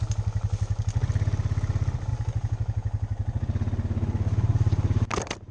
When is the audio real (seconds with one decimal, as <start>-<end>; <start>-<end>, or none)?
0.0-5.5